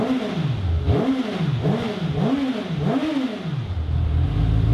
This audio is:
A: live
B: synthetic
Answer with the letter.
A